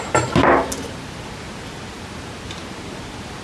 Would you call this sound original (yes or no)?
yes